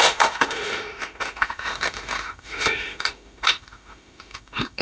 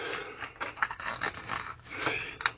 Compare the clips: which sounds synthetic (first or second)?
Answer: first